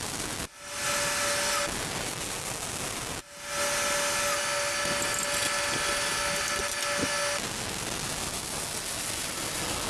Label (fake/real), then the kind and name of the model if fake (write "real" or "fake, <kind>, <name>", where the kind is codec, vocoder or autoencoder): real